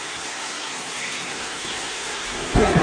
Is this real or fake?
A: fake